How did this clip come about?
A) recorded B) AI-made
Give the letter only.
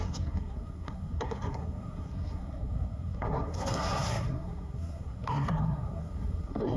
B